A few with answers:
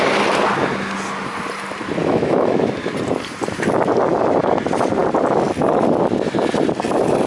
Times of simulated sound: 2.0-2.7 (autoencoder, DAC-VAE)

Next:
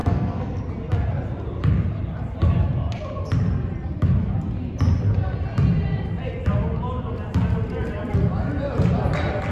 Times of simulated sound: 0.0-0.6 (codec, SNAC)

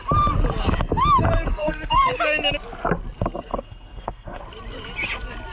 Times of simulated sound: 1.5-2.1 (codec, SNAC); 3.5-4.4

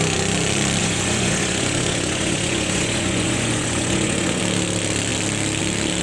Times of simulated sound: 0.8-4.4 (vocoder, Vocos)

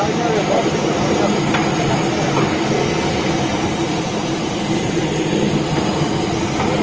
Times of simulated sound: 4.1-5.0 (vocoder, BigVGAN v2)

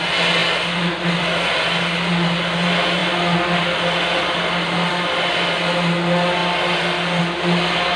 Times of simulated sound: none